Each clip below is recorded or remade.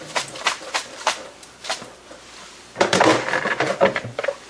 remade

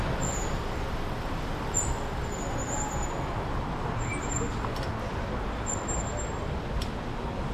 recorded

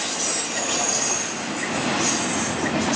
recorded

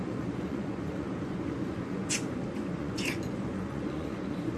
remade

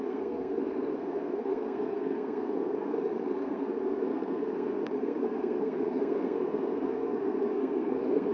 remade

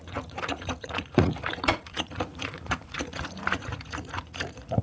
remade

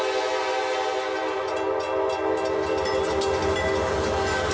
recorded